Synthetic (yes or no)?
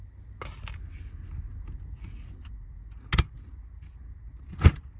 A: no